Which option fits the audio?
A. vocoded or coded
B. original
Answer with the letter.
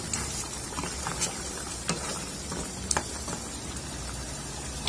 B